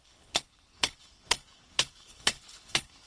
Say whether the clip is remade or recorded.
remade